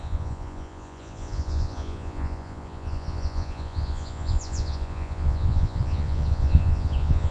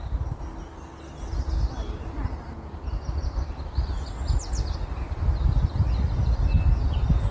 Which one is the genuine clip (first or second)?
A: second